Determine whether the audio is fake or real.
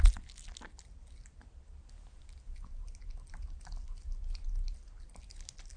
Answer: real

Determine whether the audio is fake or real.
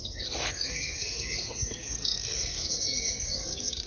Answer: fake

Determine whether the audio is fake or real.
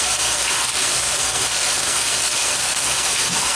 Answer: fake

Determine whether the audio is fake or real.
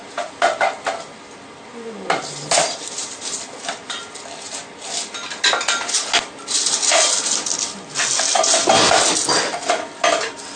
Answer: real